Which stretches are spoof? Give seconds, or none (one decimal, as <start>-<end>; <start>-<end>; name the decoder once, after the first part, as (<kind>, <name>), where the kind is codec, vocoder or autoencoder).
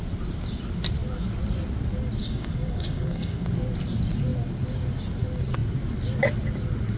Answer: 2.2-3.4 (codec, DAC)